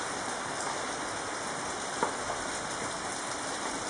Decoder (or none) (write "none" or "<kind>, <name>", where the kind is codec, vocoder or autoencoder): none